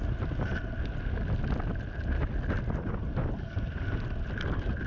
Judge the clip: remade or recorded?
recorded